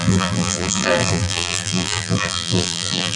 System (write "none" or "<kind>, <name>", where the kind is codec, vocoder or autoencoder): vocoder, BigVGAN v2